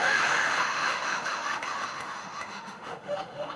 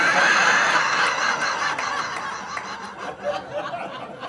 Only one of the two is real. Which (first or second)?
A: second